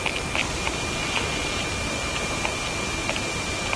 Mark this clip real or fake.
real